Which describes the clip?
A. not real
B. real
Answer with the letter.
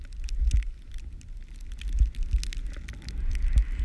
B